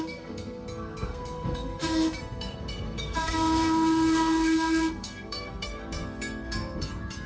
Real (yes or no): no